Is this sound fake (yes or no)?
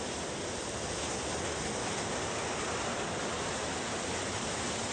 no